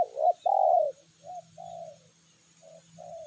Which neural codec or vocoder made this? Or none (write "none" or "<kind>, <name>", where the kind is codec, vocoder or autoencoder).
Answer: none